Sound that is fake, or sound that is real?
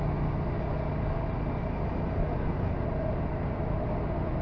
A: real